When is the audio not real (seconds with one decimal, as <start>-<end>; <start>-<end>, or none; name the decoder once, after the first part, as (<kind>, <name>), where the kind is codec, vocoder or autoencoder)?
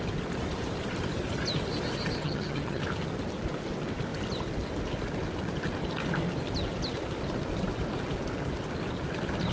2.2-2.8 (vocoder, HiFi-GAN)